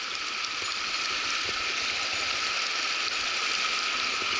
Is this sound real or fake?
real